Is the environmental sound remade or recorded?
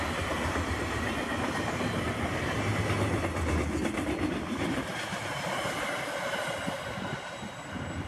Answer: recorded